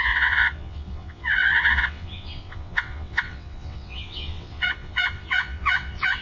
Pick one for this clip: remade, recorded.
remade